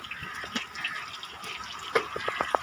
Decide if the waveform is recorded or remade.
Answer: recorded